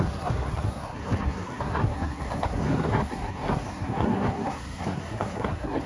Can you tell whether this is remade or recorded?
remade